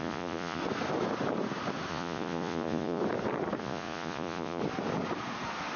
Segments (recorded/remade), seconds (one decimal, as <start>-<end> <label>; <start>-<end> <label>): 0.0-0.6 remade; 0.6-1.9 recorded; 1.9-3.0 remade; 3.0-3.6 recorded; 3.6-4.6 remade; 4.6-5.8 recorded